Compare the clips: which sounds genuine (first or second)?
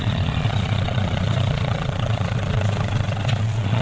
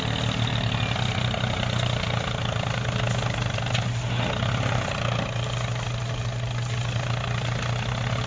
second